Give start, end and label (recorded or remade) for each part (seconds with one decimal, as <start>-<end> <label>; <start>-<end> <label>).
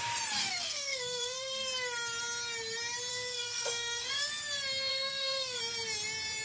0.0-0.4 recorded; 0.4-1.7 remade; 1.7-3.1 recorded; 3.1-4.3 remade; 4.3-4.9 recorded; 4.9-5.6 remade; 5.6-6.4 recorded